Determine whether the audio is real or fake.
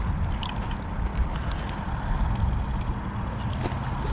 real